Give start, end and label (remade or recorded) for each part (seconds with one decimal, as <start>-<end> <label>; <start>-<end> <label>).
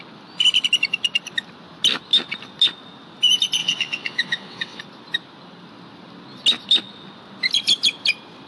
0.0-3.6 recorded; 3.6-4.8 remade; 4.8-8.5 recorded